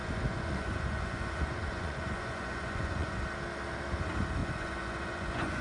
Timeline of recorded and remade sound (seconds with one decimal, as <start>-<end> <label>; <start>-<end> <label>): 0.0-3.2 remade; 3.2-4.4 recorded; 4.4-5.6 remade